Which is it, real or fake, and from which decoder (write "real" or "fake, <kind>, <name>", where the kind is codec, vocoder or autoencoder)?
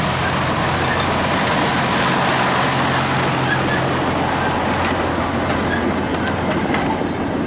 real